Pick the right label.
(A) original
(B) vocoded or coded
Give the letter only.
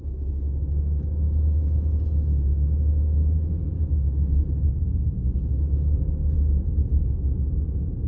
A